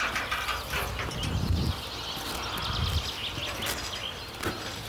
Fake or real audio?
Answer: real